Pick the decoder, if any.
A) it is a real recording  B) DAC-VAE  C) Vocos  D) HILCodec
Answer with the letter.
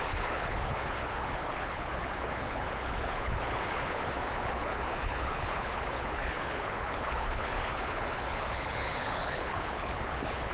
D